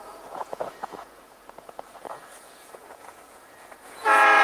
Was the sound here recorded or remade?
remade